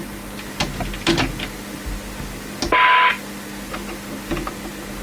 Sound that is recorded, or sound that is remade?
recorded